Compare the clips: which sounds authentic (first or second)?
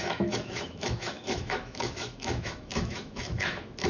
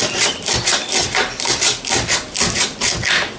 second